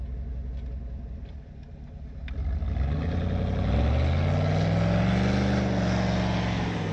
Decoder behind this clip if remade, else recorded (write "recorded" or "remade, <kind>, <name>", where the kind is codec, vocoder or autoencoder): recorded